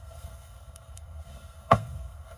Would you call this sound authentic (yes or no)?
no